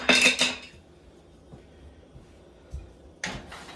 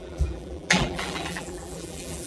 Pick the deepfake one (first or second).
second